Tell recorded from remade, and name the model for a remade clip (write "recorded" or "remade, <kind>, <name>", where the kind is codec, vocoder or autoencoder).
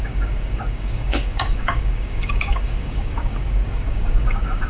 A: remade, codec, DAC